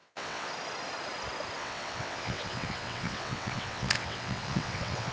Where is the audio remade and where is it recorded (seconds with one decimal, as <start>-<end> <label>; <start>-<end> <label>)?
0.0-0.5 remade; 0.5-1.6 recorded; 1.6-5.1 remade